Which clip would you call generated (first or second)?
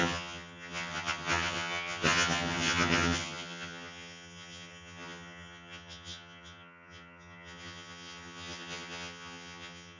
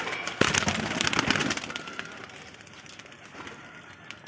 first